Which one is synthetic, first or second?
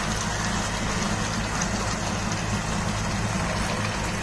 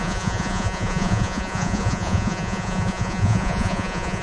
second